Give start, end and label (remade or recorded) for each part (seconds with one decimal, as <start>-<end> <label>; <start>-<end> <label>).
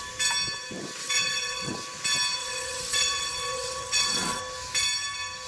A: 0.0-1.0 recorded; 1.0-1.7 remade; 1.7-2.4 recorded; 2.4-4.4 remade; 4.4-5.5 recorded